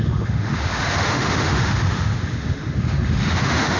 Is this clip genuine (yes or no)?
no